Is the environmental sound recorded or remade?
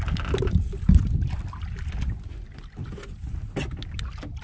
recorded